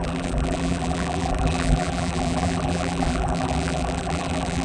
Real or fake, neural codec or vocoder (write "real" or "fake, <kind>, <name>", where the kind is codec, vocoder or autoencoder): fake, vocoder, BigVGAN v2